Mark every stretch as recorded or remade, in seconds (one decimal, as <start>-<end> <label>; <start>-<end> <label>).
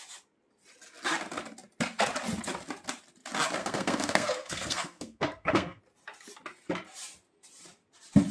0.0-3.6 recorded; 3.6-5.8 remade; 5.8-8.3 recorded